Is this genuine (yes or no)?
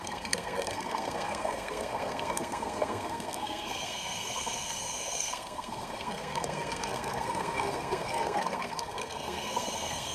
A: no